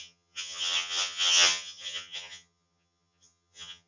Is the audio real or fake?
fake